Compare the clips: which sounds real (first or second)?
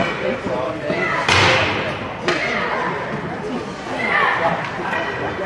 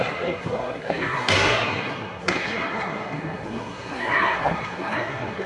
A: first